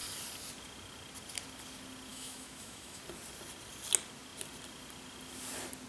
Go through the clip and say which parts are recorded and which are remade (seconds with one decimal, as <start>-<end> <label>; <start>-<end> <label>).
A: 0.0-2.1 recorded; 2.1-3.0 remade; 3.0-5.9 recorded